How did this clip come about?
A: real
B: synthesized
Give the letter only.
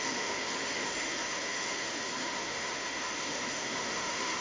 B